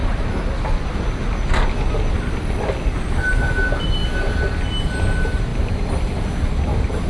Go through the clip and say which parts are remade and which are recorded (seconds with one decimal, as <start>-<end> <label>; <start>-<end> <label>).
0.0-7.1 recorded